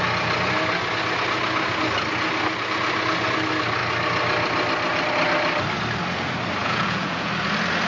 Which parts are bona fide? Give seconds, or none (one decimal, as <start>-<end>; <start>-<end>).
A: 0.0-6.6; 7.3-7.9